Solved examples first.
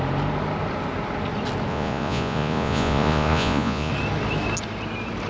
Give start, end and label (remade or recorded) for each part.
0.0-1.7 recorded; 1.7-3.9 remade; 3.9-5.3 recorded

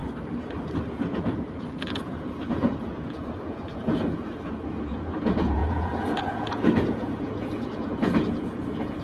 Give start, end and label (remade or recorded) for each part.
0.0-0.9 recorded; 0.9-9.0 remade